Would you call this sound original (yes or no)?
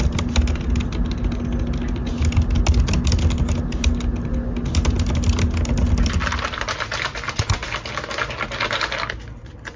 yes